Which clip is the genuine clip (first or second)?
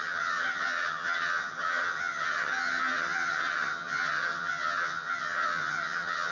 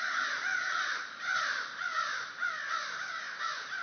second